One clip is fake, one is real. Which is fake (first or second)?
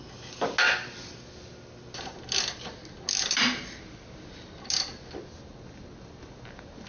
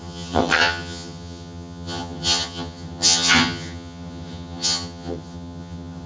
second